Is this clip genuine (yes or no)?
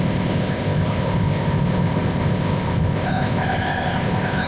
no